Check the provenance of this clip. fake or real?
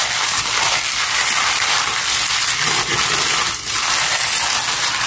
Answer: real